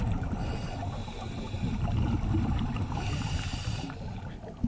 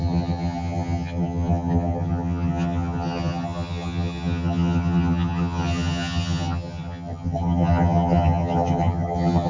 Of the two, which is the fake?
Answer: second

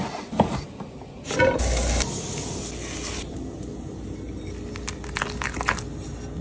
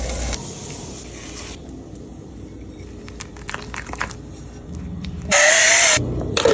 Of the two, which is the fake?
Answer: second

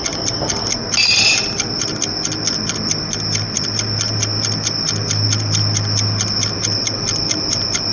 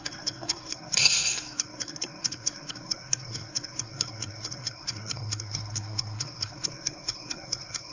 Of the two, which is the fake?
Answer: second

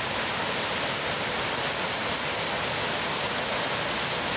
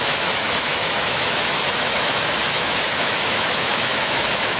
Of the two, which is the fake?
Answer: second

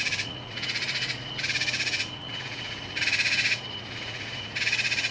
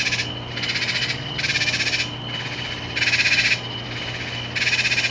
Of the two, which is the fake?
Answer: first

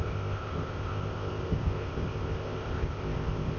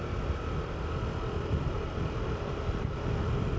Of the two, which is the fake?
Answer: first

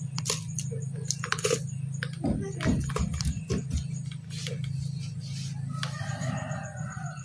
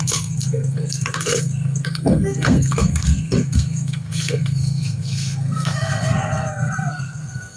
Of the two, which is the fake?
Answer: second